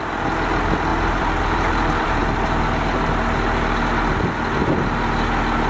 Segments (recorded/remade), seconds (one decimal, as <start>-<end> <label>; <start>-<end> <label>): 0.0-0.9 recorded; 0.9-2.2 remade; 2.2-5.7 recorded